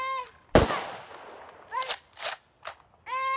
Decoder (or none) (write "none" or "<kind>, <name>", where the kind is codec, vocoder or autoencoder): none